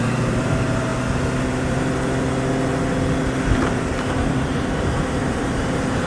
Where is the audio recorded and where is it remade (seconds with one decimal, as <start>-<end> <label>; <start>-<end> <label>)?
0.0-0.9 remade; 0.9-3.5 recorded; 3.5-6.1 remade